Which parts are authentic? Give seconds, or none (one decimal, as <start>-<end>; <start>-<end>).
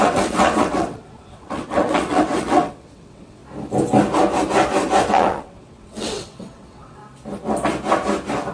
3.4-5.0; 7.0-8.5